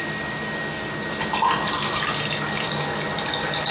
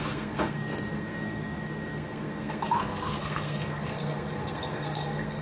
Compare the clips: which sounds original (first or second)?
first